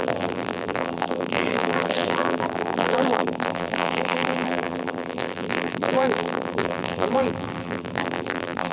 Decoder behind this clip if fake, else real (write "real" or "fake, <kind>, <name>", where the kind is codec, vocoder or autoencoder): fake, vocoder, BigVGAN v2